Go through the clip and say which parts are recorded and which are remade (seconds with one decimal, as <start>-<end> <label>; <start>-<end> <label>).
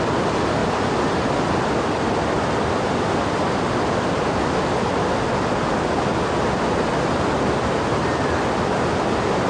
0.0-9.5 recorded